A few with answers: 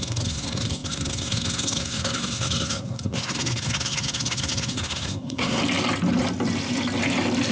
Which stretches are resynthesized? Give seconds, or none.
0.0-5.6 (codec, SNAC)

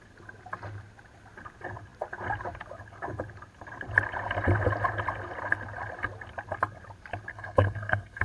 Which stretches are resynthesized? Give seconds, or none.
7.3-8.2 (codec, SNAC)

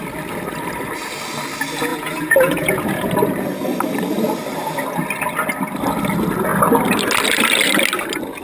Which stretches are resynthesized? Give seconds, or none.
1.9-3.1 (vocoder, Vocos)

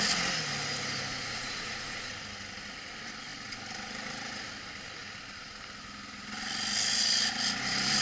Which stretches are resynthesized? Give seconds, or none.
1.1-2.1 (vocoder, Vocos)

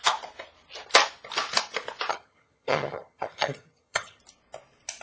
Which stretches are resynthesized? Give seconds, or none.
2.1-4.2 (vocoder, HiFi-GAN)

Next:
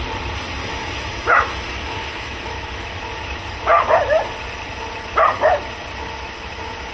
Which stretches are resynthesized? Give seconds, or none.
0.6-3.0 (autoencoder, DAC-VAE)

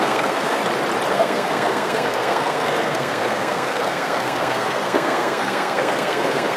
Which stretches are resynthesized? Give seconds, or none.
0.0-0.6 (codec, SNAC); 1.1-6.6